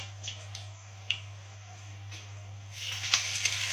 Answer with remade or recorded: remade